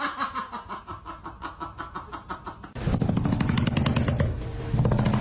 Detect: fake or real real